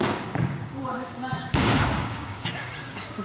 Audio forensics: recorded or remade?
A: remade